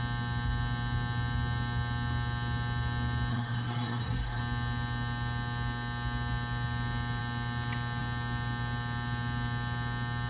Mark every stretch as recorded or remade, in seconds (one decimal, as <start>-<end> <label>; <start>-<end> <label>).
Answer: 0.0-3.3 recorded; 3.3-4.4 remade; 4.4-10.3 recorded